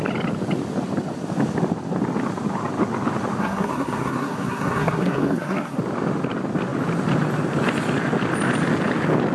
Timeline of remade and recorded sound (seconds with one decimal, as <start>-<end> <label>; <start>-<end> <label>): 0.0-3.4 recorded; 3.4-5.8 remade; 5.8-9.3 recorded